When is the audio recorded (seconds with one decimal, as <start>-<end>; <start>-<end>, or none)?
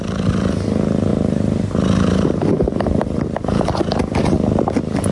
0.0-1.1; 4.2-5.1